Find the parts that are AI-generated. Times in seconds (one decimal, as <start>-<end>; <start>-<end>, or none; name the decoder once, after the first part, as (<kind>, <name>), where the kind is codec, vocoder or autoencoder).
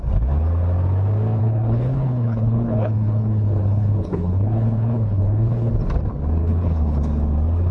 1.4-5.7 (codec, HILCodec); 6.4-7.0